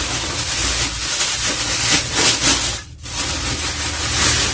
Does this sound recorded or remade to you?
recorded